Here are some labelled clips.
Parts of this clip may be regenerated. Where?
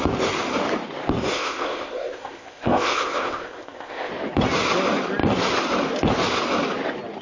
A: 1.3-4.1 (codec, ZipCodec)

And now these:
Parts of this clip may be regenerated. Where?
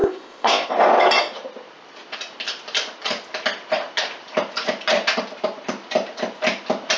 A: 0.0-0.7 (codec, ZipCodec)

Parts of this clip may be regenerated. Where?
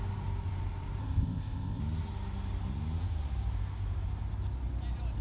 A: 1.0-1.8 (codec, ZipCodec)